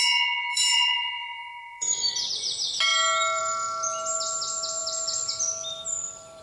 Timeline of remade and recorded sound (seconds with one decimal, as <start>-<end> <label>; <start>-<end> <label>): 0.0-0.5 recorded; 0.5-2.3 remade; 2.3-4.8 recorded; 4.8-6.4 remade